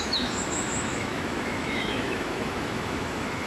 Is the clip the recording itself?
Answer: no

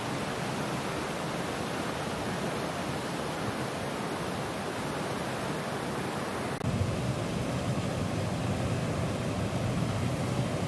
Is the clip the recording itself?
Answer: yes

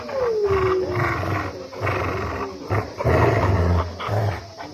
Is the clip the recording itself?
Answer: yes